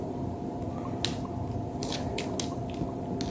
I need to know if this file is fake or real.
real